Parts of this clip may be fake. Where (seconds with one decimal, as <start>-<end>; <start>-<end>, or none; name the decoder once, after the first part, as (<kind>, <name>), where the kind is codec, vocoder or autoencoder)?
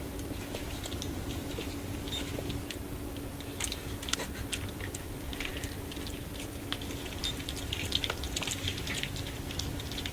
none